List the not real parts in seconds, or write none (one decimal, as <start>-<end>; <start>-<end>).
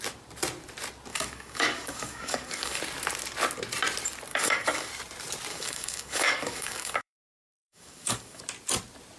1.1-2.8; 4.3-4.9; 5.5-8.4